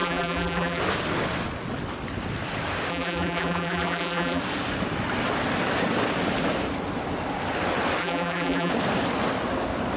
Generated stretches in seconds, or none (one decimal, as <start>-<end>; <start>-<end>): 0.0-0.8; 2.9-4.4; 8.0-8.7